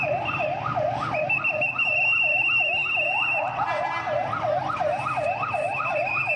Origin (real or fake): real